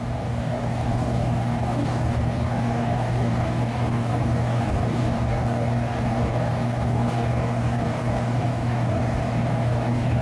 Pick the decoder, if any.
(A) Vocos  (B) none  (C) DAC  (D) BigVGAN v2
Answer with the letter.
C